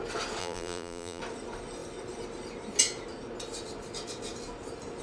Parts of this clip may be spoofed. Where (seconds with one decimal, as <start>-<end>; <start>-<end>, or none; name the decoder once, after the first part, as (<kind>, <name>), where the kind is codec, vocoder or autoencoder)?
0.4-1.2 (vocoder, BigVGAN v2)